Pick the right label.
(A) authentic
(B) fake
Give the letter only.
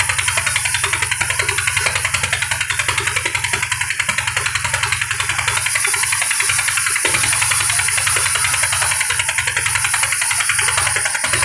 A